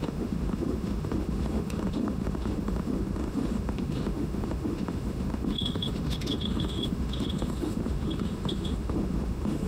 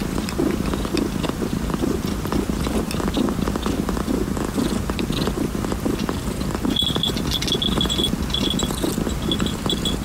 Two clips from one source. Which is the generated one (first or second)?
first